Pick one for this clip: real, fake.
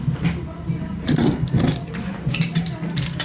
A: real